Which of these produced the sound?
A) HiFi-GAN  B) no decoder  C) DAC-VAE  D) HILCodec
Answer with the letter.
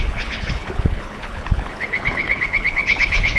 D